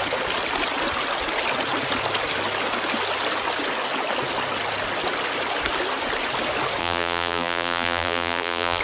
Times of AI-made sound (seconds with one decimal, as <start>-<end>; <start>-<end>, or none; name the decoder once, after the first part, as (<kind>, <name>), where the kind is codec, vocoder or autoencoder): 6.8-8.8 (vocoder, BigVGAN v2)